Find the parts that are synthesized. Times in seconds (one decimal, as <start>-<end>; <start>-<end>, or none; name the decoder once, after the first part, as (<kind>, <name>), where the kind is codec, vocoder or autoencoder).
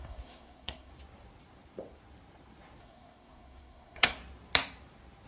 0.0-0.9 (codec, SNAC); 2.8-4.2